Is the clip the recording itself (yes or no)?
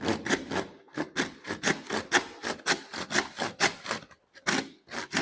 yes